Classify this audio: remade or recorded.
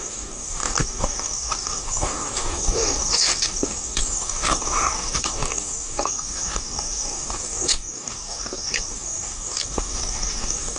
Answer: remade